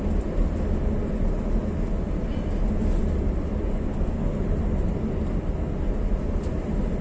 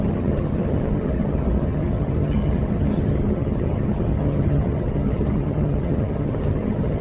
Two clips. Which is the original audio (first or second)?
first